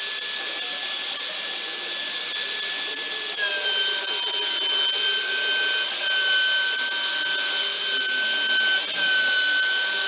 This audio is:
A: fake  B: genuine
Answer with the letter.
B